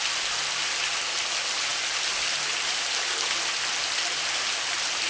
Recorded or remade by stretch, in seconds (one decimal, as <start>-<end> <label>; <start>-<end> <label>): 0.0-5.1 recorded